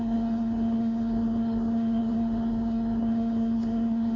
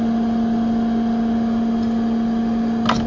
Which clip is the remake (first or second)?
first